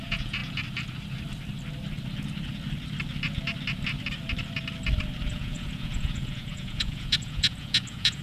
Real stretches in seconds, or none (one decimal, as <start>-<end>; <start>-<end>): 0.4-5.3